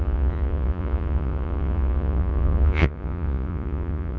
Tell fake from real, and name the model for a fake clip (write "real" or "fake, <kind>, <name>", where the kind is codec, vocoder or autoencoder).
fake, vocoder, Vocos